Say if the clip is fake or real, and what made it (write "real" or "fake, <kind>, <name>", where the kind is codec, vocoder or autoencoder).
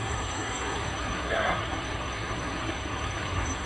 fake, codec, SNAC